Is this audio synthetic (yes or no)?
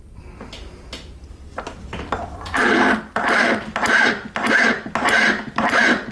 no